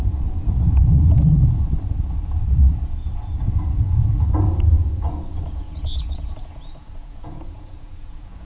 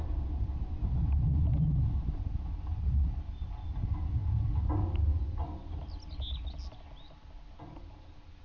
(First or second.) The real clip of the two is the second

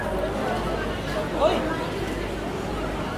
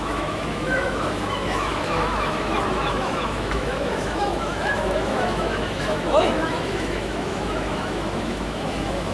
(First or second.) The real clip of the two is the first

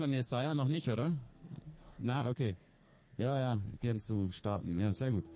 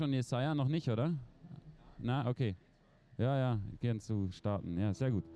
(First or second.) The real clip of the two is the second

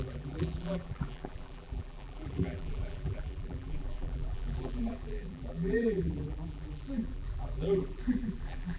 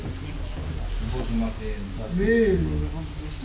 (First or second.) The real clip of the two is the second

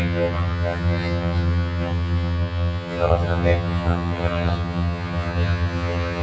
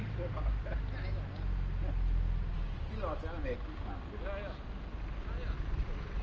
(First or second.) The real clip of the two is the second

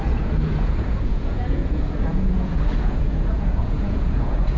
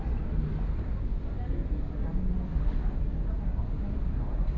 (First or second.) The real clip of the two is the second